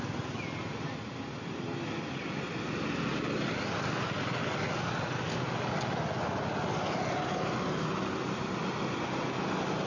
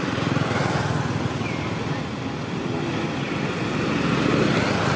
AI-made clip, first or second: second